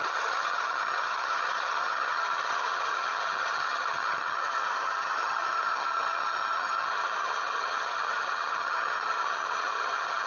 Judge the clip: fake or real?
fake